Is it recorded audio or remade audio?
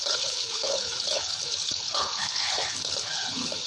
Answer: remade